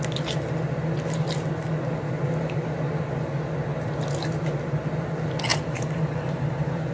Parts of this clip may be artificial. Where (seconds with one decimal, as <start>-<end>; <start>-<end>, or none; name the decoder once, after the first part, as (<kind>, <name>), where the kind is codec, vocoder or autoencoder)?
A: 5.5-6.9 (vocoder, BigVGAN v2)